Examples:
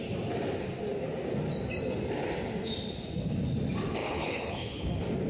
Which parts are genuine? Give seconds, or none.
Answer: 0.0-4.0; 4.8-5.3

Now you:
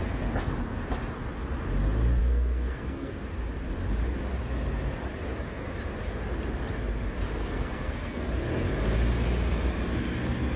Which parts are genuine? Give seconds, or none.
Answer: 0.0-2.2; 3.1-7.4; 8.3-10.6

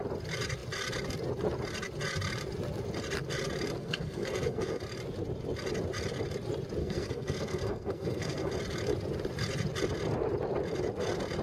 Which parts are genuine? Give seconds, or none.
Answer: 0.0-3.8; 4.8-6.8; 8.5-11.4

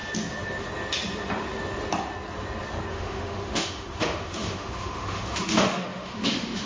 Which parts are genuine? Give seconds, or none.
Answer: 0.0-2.9